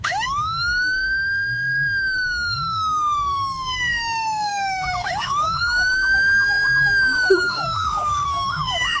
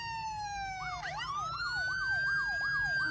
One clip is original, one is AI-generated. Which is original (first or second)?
second